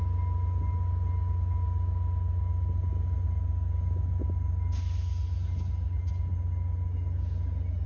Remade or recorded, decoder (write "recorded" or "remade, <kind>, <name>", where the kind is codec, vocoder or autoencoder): recorded